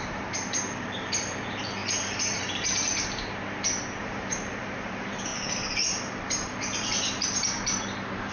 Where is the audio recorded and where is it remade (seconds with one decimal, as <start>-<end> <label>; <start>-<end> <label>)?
0.0-2.9 remade; 2.9-4.0 recorded; 4.0-5.3 remade; 5.3-6.1 recorded; 6.1-8.3 remade